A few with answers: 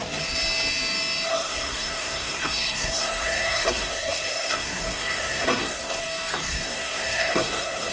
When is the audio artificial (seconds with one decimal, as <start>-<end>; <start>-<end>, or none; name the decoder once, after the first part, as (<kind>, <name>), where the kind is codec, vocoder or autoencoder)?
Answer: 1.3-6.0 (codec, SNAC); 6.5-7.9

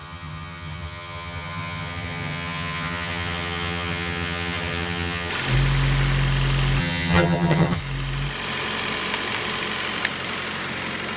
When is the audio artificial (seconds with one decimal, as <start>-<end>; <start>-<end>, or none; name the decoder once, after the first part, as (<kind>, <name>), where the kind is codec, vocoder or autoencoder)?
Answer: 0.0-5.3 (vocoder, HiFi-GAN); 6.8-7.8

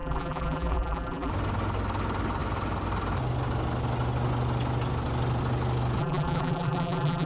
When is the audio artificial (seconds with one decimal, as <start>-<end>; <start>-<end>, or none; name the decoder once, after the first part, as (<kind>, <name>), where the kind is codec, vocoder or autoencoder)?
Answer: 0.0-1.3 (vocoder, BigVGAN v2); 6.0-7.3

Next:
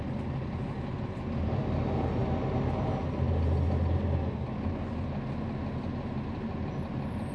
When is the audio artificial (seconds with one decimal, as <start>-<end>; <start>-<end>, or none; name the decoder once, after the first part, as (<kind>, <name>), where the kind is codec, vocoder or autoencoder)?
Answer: none

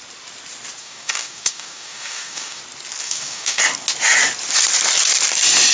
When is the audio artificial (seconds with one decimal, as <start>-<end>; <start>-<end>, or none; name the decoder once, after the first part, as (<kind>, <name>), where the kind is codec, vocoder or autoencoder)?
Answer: 0.8-2.6 (codec, DAC); 3.0-3.6

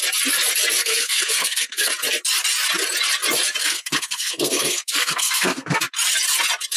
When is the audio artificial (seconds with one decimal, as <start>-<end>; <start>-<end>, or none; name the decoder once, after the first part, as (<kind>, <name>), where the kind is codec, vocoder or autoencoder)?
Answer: 0.8-1.9 (codec, SNAC); 3.6-5.8

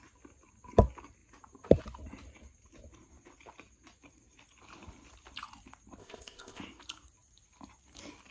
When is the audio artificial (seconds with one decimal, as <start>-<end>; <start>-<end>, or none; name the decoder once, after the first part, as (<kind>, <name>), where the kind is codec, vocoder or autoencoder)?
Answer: 6.0-6.6 (codec, ZipCodec)